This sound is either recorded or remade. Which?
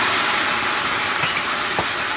recorded